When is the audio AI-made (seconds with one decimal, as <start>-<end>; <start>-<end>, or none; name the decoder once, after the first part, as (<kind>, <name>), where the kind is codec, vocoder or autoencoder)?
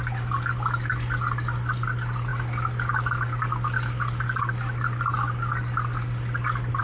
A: none